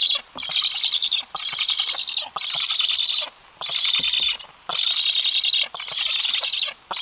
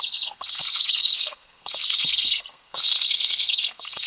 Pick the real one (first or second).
first